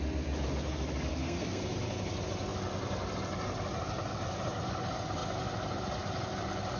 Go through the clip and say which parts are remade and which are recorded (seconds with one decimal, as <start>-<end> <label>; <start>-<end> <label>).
0.0-1.1 recorded; 1.1-1.6 remade; 1.6-6.8 recorded